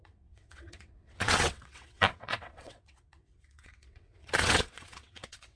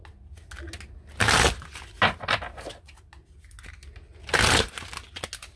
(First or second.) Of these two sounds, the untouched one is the second